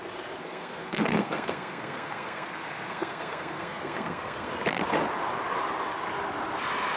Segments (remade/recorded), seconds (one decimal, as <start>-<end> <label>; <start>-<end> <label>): 0.0-0.4 recorded; 0.4-4.5 remade; 4.5-7.0 recorded